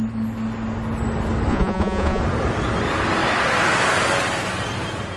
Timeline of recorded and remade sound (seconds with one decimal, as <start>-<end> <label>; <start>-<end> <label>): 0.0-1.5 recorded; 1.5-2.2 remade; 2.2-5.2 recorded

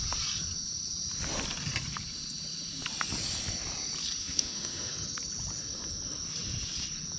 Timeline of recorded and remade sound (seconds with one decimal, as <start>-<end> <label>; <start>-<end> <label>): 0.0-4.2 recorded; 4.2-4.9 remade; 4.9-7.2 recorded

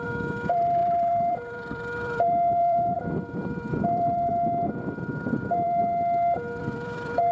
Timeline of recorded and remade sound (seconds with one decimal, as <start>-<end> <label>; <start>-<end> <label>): 0.0-4.3 remade; 4.3-5.3 recorded; 5.3-5.8 remade; 5.8-6.6 recorded; 6.6-7.3 remade

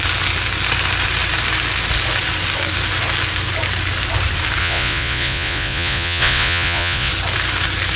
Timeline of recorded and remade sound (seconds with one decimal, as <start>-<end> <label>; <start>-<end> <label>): 0.0-4.6 recorded; 4.6-7.1 remade; 7.1-8.0 recorded